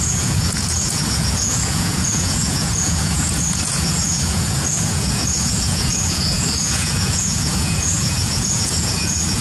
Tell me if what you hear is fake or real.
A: fake